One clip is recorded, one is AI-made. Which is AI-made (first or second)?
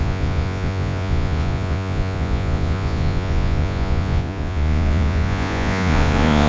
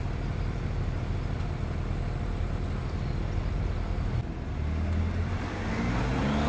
first